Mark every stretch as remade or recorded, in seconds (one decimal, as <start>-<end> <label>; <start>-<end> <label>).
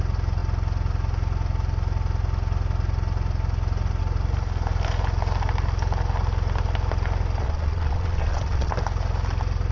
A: 0.0-7.4 recorded; 7.4-8.7 remade; 8.7-9.7 recorded